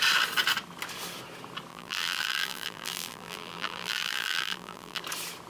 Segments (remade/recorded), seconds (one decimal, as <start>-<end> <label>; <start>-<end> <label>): 0.0-1.7 recorded; 1.7-5.0 remade; 5.0-5.5 recorded